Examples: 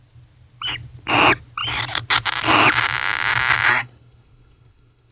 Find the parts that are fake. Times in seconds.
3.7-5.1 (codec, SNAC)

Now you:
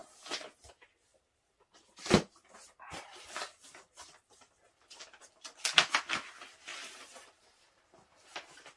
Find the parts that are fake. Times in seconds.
1.1-4.8 (vocoder, BigVGAN v2); 6.7-7.7

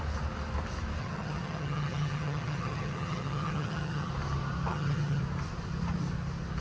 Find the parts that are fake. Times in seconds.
1.0-4.1 (vocoder, HiFi-GAN); 4.7-5.2

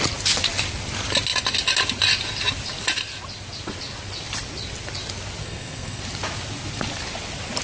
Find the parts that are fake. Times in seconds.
5.4-6.0 (codec, SNAC)

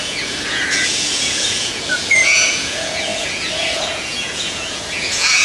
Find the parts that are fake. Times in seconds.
0.0-5.4 (vocoder, Vocos)

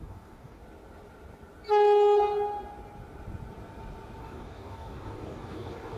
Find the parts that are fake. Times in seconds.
0.0-0.6 (codec, DAC); 4.2-6.0

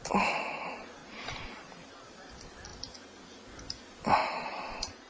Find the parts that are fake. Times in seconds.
1.0-2.3 (vocoder, BigVGAN v2); 4.2-5.1